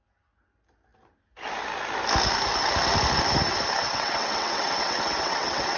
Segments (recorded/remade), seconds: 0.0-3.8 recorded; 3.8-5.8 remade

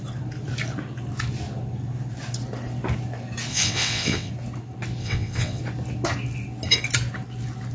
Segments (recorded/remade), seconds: 0.0-3.5 recorded; 3.5-4.3 remade; 4.3-5.0 recorded; 5.0-5.6 remade; 5.6-7.7 recorded